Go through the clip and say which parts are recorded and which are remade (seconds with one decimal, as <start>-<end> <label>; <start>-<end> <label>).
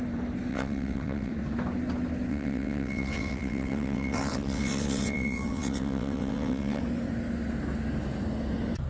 0.0-0.5 recorded; 0.5-1.3 remade; 1.3-2.3 recorded; 2.3-6.8 remade; 6.8-8.9 recorded